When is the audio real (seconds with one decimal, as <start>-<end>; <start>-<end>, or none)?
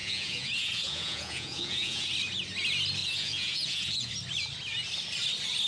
2.1-3.0; 4.1-5.7